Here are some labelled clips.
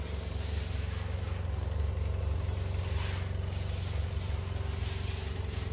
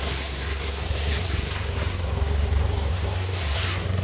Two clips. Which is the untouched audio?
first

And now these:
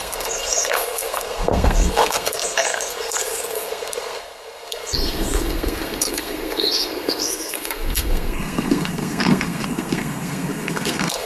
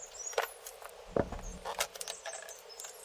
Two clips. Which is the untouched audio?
second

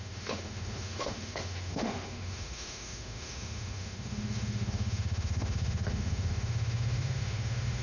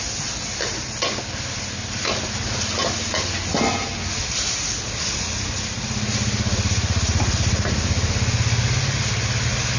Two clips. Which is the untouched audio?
second